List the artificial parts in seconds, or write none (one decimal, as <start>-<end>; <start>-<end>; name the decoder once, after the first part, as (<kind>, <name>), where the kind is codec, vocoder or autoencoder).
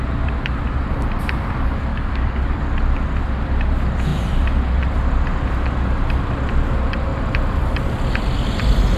1.9-2.6 (codec, DAC)